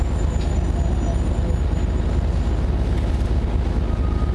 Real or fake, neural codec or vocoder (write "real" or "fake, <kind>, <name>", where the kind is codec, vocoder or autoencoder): real